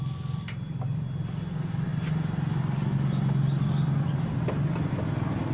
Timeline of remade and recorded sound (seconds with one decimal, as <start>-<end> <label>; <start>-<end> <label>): 0.0-5.5 recorded